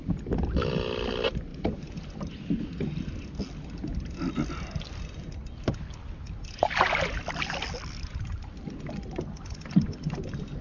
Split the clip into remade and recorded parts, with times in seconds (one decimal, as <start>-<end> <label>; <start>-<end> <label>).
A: 0.0-10.6 recorded